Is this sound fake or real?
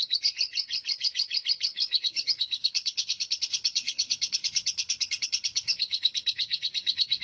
fake